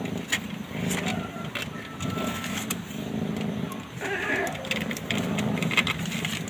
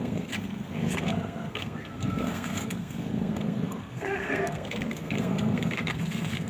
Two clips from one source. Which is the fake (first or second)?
second